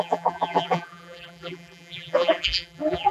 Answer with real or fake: fake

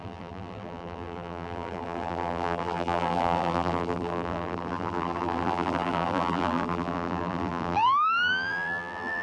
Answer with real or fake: fake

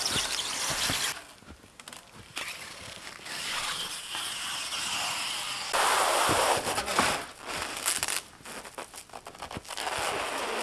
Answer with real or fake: real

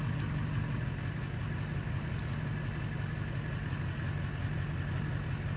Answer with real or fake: real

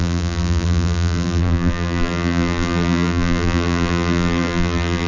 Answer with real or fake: fake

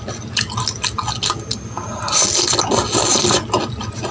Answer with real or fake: real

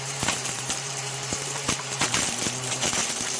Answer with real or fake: fake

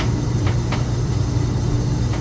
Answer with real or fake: real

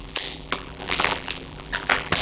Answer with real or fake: fake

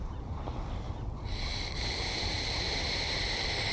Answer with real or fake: real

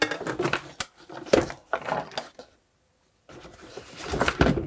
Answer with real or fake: real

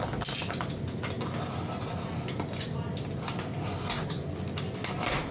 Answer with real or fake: real